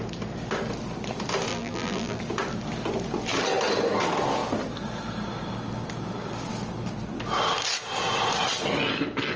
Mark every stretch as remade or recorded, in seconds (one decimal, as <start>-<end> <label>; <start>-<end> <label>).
0.0-1.5 recorded; 1.5-2.2 remade; 2.2-9.4 recorded